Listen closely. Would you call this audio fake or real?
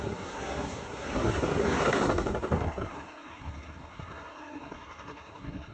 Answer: fake